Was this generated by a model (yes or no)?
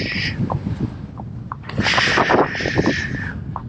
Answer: no